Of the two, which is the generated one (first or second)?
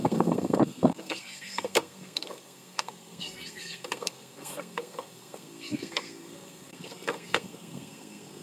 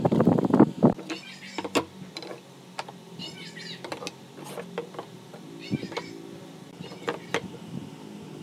first